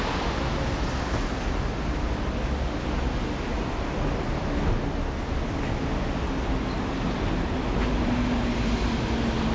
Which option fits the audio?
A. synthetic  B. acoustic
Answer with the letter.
B